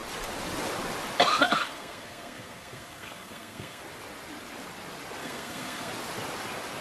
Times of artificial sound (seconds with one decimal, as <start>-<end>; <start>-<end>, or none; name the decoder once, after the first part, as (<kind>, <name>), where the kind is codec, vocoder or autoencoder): 1.3-3.8 (codec, SNAC); 5.2-5.9